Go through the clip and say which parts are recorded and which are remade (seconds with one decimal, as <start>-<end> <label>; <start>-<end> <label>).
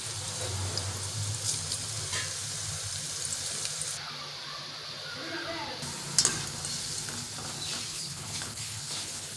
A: 0.0-7.9 recorded; 7.9-9.4 remade